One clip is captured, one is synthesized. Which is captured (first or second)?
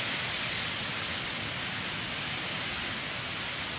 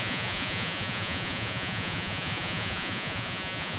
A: first